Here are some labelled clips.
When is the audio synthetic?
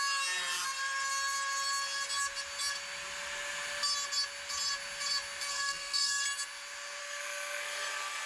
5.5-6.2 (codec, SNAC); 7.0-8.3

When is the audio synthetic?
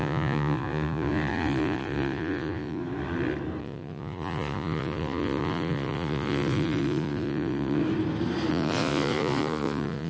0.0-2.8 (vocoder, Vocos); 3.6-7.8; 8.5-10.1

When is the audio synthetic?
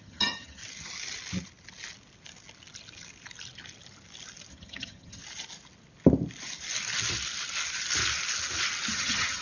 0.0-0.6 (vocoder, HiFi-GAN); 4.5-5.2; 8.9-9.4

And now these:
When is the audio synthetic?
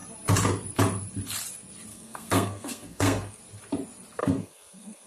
1.9-3.4 (codec, SNAC); 4.2-5.1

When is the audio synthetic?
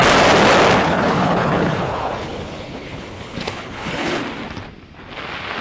0.8-4.2 (codec, HILCodec)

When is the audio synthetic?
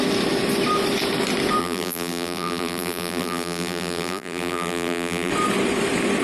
1.6-5.3 (vocoder, BigVGAN v2)